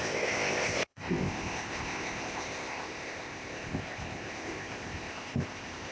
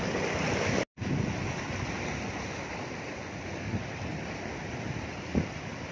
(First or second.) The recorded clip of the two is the second